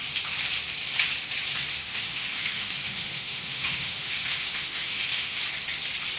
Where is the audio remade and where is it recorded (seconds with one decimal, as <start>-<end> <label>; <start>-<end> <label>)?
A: 0.0-1.7 recorded; 1.7-5.4 remade; 5.4-6.2 recorded